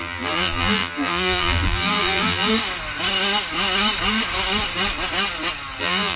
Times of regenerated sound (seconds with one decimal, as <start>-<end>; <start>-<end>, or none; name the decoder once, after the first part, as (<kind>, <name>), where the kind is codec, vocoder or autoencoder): 0.0-2.5 (vocoder, BigVGAN v2); 5.8-6.2